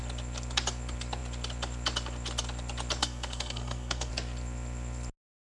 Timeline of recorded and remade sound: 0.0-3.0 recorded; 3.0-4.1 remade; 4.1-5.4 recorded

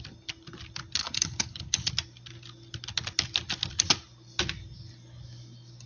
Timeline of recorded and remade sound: 0.0-1.0 recorded; 1.0-1.9 remade; 1.9-5.9 recorded

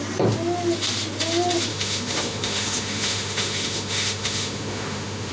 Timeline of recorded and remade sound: 0.0-1.7 recorded; 1.7-5.3 remade

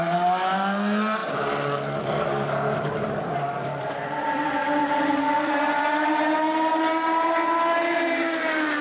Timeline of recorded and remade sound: 0.0-1.2 recorded; 1.2-6.2 remade; 6.2-8.8 recorded

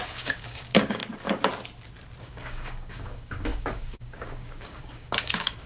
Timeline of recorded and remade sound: 0.0-1.0 remade; 1.0-2.2 recorded; 2.2-5.7 remade

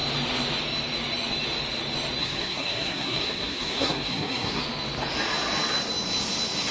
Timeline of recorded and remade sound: 0.0-2.2 recorded; 2.2-4.6 remade; 4.6-6.7 recorded

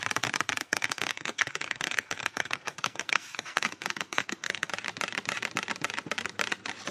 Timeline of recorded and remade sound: 0.0-0.6 recorded; 0.6-4.7 remade; 4.7-6.9 recorded

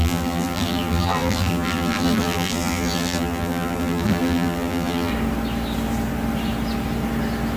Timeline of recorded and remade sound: 0.0-5.1 remade; 5.1-7.6 recorded